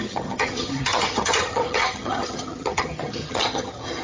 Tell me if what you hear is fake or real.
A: fake